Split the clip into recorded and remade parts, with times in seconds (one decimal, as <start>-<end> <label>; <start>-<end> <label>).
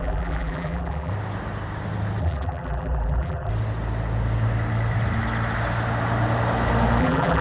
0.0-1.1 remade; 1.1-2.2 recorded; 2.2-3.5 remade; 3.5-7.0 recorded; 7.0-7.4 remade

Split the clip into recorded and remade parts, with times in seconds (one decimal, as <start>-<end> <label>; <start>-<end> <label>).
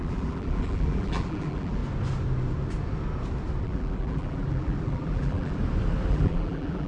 0.0-1.8 remade; 1.8-3.6 recorded; 3.6-5.6 remade; 5.6-6.1 recorded; 6.1-6.9 remade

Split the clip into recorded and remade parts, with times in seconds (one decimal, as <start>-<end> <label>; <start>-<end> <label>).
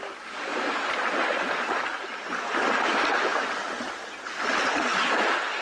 0.0-5.6 recorded